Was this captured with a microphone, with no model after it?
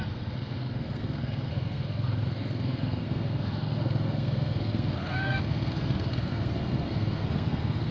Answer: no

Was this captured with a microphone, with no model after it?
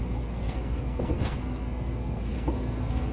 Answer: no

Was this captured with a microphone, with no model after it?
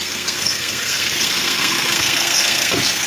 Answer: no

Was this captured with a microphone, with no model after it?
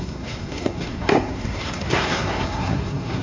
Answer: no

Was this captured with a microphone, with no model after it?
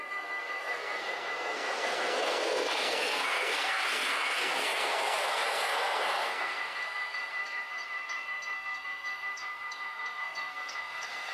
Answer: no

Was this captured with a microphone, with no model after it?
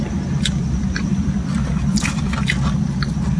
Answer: yes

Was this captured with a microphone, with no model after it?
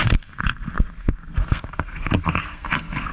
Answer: no